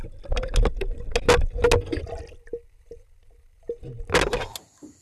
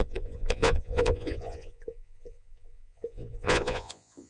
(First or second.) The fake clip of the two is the second